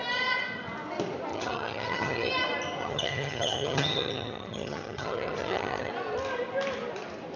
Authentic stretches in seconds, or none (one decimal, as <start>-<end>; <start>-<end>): 0.0-1.3; 2.3-2.8; 5.9-7.4